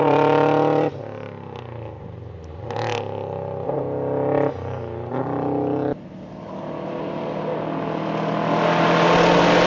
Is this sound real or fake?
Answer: real